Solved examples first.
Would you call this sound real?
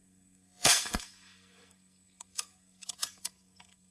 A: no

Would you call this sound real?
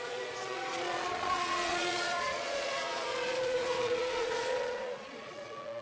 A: no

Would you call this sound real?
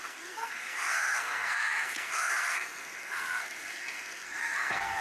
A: no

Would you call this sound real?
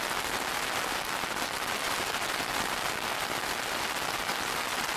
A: yes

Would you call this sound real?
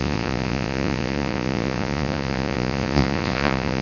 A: no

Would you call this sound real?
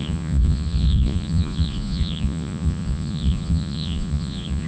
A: no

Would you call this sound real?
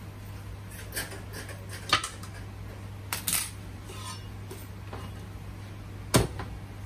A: yes